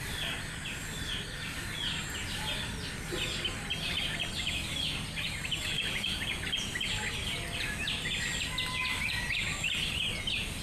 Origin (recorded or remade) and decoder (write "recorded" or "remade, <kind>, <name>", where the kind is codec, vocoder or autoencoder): recorded